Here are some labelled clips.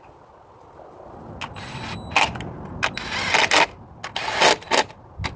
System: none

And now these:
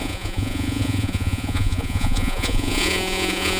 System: vocoder, Vocos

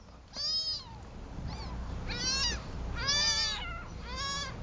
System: none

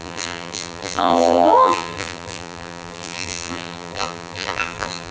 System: vocoder, BigVGAN v2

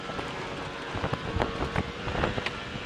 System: none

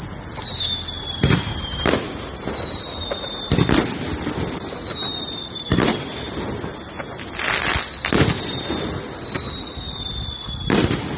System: none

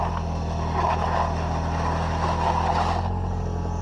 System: none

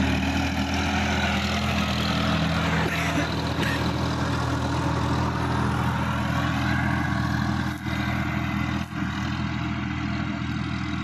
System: none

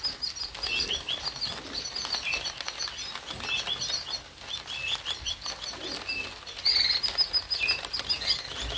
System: none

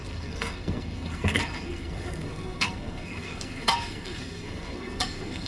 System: codec, SNAC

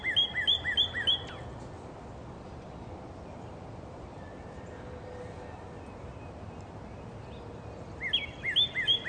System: none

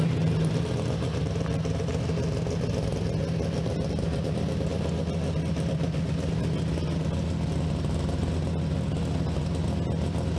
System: none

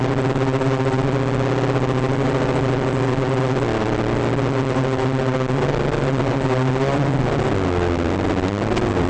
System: none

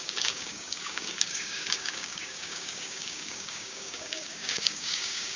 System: codec, DAC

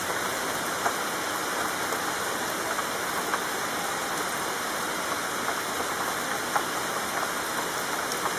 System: none